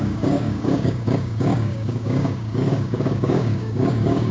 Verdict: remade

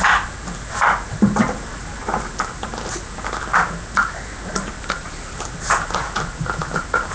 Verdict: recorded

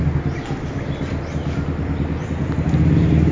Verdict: recorded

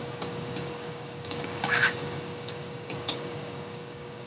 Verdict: remade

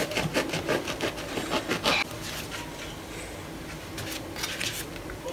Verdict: recorded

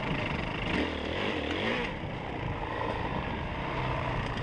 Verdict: recorded